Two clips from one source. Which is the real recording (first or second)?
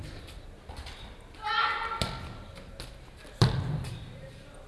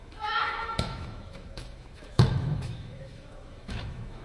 first